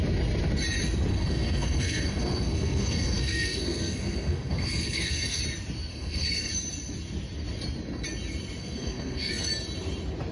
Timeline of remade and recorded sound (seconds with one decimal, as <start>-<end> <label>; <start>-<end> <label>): 0.0-1.1 recorded; 1.1-5.4 remade; 5.4-5.9 recorded; 5.9-6.5 remade; 6.5-8.6 recorded; 8.6-9.5 remade; 9.5-10.3 recorded